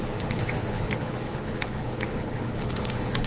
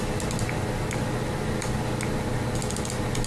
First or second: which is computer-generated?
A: first